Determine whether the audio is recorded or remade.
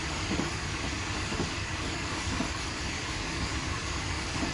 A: remade